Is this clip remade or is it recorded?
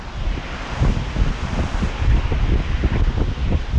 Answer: recorded